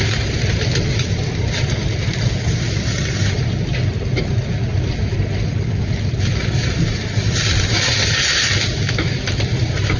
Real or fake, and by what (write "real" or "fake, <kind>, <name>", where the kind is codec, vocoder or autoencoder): fake, vocoder, BigVGAN v2